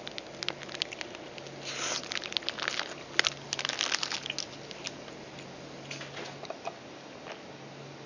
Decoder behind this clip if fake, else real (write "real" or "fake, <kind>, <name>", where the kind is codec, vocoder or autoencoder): real